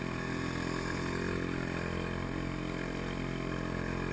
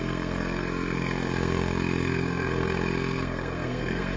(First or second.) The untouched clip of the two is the first